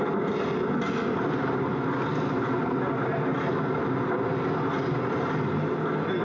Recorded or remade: recorded